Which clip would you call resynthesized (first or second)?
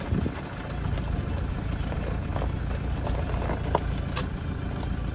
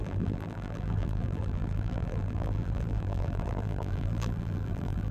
second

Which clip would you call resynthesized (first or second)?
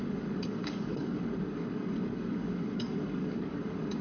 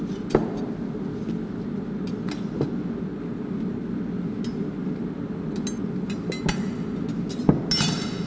first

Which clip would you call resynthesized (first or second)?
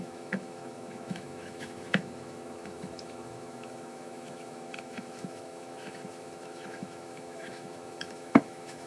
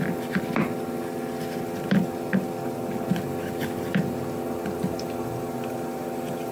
first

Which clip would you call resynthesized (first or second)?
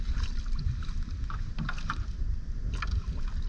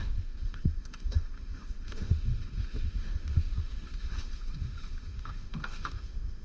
second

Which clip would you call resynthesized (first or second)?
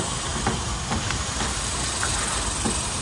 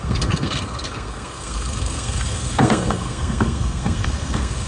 second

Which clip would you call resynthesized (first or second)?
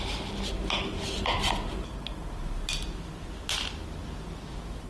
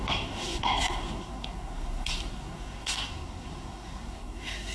second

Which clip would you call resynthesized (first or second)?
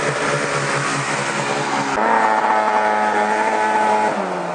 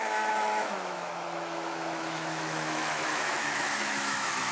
second